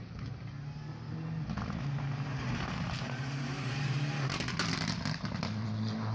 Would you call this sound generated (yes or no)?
no